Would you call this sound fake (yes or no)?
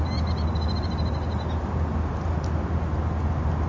no